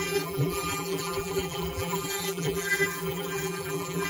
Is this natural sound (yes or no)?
no